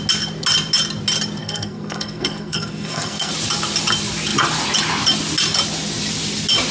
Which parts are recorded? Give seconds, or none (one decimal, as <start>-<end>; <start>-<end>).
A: 0.0-1.4; 3.3-6.7